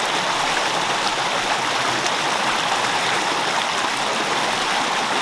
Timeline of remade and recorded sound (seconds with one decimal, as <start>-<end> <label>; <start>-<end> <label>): 0.0-5.2 recorded